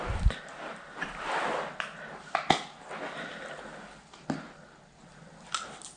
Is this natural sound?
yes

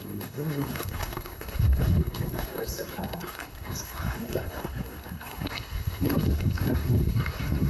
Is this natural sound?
no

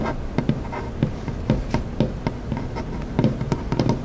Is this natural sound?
yes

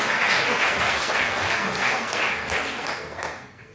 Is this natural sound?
no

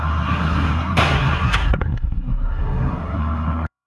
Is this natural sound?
no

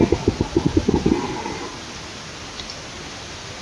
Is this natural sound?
yes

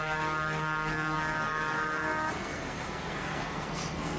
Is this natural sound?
no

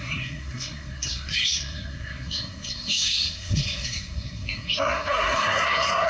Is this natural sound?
no